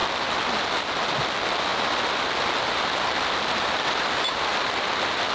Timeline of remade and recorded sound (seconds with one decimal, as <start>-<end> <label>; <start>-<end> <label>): 0.0-5.3 recorded